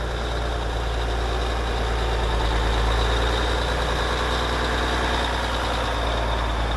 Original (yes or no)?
yes